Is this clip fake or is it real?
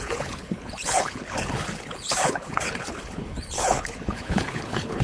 fake